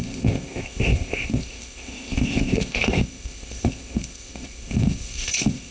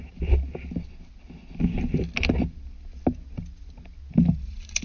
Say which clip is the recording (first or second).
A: second